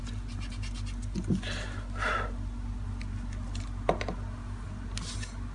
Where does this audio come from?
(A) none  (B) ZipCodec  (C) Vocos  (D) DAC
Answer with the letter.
A